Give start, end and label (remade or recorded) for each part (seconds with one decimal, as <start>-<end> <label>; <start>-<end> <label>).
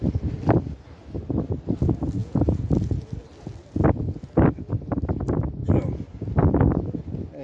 0.0-2.2 recorded; 2.2-2.7 remade; 2.7-7.4 recorded